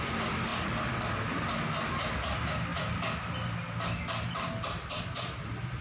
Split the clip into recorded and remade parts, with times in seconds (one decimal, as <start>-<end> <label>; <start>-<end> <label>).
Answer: 0.0-5.8 recorded